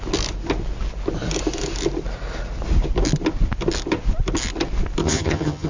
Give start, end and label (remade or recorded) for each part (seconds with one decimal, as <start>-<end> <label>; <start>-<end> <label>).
0.0-5.0 recorded; 5.0-5.7 remade